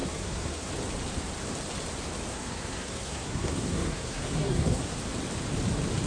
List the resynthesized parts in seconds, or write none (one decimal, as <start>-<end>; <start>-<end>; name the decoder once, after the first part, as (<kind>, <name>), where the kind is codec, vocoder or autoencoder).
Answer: 0.0-0.7 (codec, SNAC); 2.3-4.9